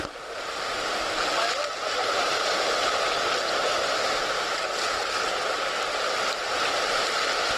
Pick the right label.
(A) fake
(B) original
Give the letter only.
B